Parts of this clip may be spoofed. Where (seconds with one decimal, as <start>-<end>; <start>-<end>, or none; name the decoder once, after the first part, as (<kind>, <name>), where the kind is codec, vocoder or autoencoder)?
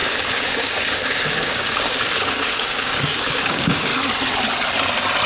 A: 0.0-3.9 (codec, DAC)